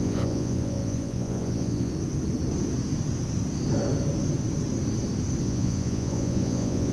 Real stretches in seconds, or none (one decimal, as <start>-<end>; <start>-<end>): 1.9-5.4